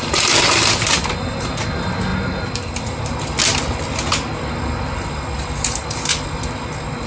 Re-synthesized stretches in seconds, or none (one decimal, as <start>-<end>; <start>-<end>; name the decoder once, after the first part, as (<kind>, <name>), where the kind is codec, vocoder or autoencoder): none